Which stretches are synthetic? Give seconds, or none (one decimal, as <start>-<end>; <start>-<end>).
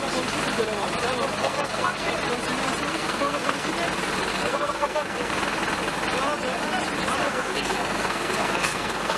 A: 1.4-2.1; 2.9-3.7; 4.3-5.3; 7.2-9.2